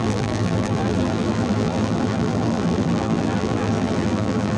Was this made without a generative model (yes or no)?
no